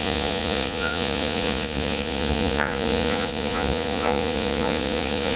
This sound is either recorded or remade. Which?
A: remade